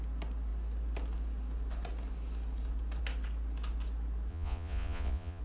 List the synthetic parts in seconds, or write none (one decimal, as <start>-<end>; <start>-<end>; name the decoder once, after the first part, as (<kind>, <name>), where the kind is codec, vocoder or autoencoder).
4.3-5.4 (vocoder, Vocos)